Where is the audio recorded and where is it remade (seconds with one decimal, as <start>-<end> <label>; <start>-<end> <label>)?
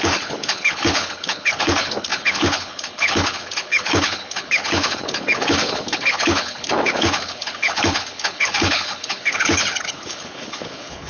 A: 0.0-11.1 remade